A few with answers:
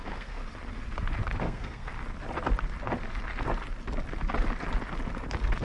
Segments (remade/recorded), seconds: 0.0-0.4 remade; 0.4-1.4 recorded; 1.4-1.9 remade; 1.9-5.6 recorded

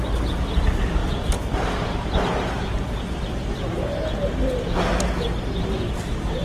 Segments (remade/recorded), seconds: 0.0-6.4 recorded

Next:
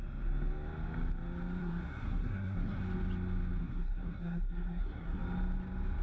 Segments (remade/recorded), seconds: 0.0-1.6 recorded; 1.6-2.8 remade; 2.8-3.6 recorded; 3.6-5.2 remade; 5.2-6.0 recorded

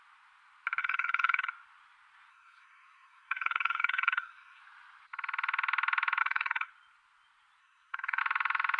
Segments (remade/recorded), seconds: 0.0-0.8 recorded; 0.8-1.5 remade; 1.5-2.3 recorded; 2.3-4.6 remade; 4.6-6.2 recorded; 6.2-6.7 remade; 6.7-7.6 recorded; 7.6-8.2 remade; 8.2-8.8 recorded

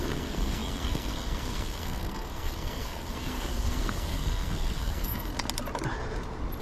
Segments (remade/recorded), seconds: 0.0-5.3 remade; 5.3-6.6 recorded